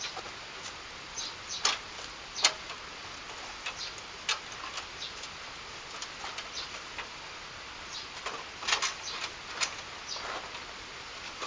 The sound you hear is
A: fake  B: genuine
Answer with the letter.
B